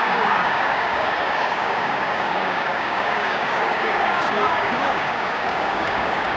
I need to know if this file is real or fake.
fake